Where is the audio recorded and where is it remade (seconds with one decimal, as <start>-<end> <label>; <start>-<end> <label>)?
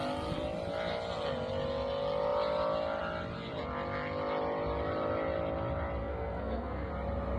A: 0.0-6.0 recorded; 6.0-6.9 remade; 6.9-7.4 recorded